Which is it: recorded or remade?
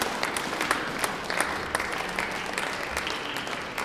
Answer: recorded